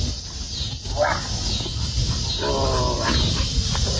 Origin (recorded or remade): recorded